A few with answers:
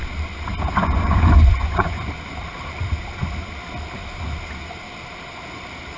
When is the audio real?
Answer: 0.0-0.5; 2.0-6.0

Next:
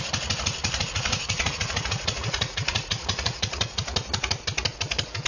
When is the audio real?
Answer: 0.0-0.6; 3.8-5.3

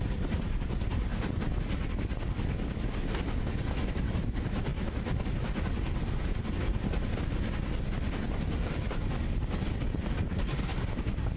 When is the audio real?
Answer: 1.1-4.0; 4.7-10.0

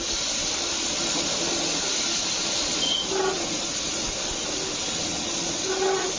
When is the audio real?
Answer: 0.0-6.2

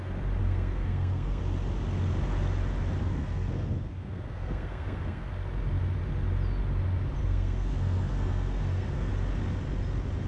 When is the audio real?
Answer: 0.0-0.4; 1.4-3.0; 5.3-7.2; 9.1-10.3

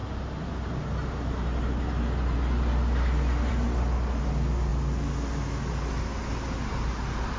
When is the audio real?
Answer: 0.0-7.4

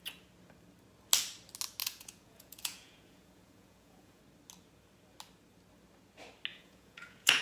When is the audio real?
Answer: 0.0-1.8; 4.2-6.5